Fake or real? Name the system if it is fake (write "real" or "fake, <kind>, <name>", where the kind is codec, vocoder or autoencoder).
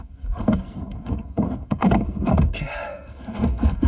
fake, codec, SNAC